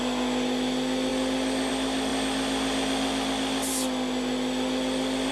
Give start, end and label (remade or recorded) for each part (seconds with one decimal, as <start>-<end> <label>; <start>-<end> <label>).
0.0-5.3 recorded